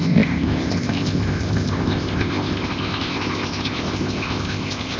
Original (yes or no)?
no